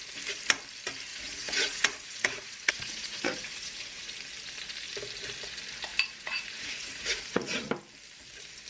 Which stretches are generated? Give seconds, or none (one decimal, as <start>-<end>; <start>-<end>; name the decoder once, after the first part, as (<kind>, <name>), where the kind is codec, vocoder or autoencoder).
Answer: 1.1-4.1 (vocoder, Vocos); 5.9-7.7